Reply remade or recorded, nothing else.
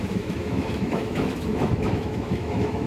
remade